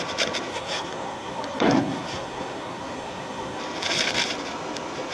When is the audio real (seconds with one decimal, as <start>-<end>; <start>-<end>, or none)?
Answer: 0.0-0.5; 3.6-5.1